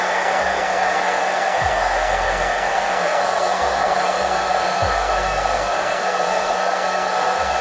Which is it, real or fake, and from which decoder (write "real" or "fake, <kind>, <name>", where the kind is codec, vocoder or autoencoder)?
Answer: fake, codec, SNAC